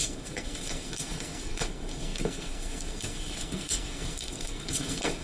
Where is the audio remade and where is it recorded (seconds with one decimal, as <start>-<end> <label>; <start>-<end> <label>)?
0.0-5.2 remade